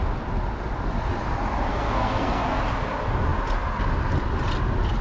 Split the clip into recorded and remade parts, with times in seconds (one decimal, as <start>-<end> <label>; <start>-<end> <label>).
0.0-1.7 recorded; 1.7-2.6 remade; 2.6-5.0 recorded